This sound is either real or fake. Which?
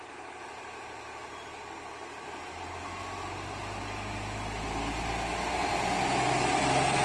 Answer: real